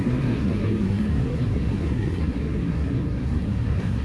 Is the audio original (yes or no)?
no